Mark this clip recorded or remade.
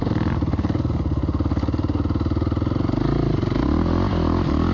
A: recorded